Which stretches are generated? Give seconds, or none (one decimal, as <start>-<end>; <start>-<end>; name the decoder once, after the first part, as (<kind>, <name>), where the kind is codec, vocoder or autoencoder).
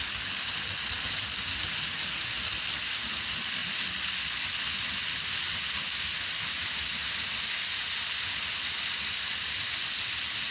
none